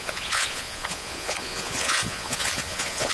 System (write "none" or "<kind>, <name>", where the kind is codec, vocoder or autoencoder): vocoder, Vocos